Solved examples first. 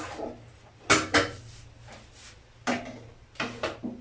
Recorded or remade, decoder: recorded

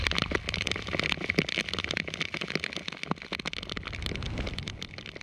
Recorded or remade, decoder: recorded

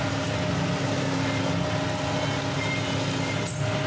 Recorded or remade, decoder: recorded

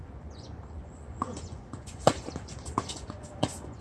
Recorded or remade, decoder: remade, vocoder, Vocos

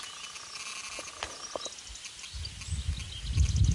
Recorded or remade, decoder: recorded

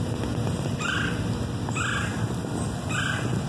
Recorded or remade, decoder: recorded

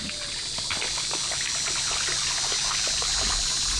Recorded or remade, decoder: recorded